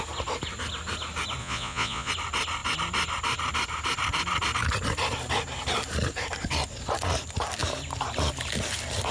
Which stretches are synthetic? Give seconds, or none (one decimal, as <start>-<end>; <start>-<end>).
1.4-2.1